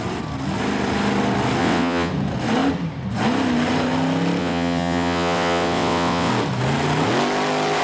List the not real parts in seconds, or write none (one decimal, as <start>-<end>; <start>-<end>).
1.6-2.1; 4.4-6.3